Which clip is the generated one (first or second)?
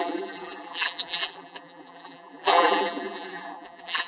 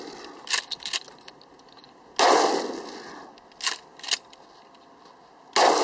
first